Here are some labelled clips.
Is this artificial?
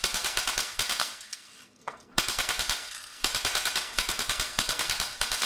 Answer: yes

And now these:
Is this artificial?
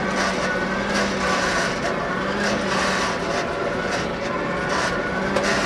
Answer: no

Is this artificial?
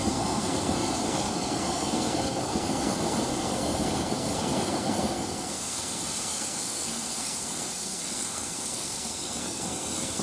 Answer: yes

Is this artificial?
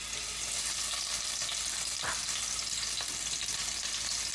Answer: no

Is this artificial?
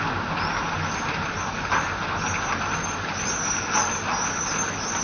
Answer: no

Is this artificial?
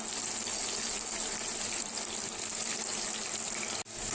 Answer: no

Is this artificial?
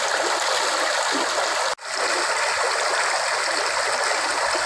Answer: no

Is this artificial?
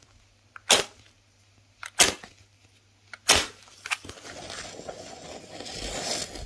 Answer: no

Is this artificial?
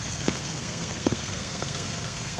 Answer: yes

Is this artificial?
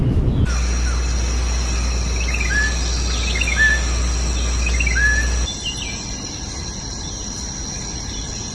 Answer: no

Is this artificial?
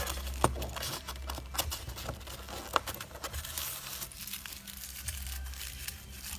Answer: no